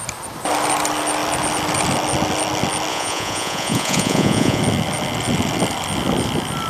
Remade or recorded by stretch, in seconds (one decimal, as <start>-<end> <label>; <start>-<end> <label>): 0.0-2.9 recorded; 2.9-4.6 remade; 4.6-6.7 recorded